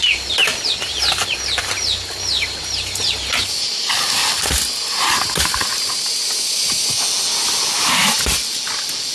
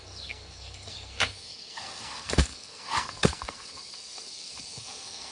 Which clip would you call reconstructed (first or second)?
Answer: second